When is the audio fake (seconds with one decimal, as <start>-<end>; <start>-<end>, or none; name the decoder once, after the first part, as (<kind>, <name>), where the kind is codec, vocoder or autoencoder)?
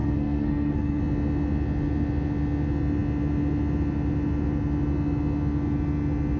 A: 0.0-1.0 (codec, SNAC)